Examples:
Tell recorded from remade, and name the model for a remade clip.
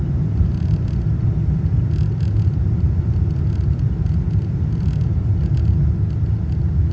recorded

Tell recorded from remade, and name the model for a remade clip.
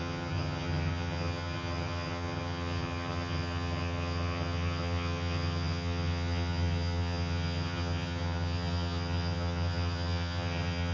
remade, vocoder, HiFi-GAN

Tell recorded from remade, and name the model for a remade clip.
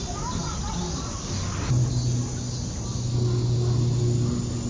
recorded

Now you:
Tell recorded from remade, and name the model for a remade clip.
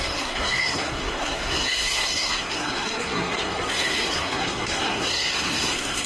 remade, codec, SNAC